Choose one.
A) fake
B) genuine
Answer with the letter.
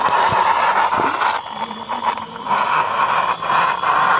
B